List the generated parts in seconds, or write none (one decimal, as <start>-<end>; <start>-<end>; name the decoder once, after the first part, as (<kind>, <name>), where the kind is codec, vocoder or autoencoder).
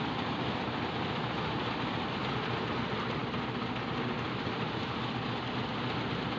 none